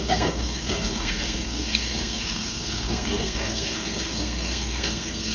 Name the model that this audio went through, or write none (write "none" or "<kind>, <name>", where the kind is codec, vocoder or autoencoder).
codec, SNAC